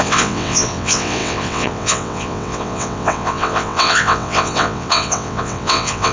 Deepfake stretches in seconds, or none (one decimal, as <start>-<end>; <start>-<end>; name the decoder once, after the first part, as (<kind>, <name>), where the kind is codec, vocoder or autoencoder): 0.0-6.1 (vocoder, WaveNeXt)